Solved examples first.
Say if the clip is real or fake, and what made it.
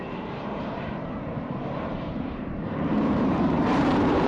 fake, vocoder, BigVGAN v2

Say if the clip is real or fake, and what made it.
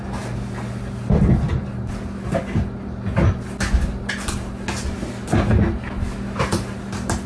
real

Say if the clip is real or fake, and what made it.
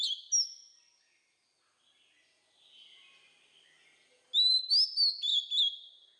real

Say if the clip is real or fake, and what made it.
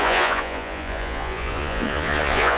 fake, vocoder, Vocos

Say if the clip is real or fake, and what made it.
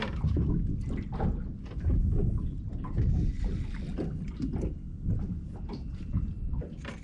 real